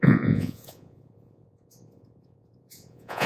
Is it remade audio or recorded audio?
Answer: remade